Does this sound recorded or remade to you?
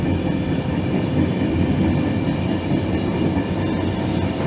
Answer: recorded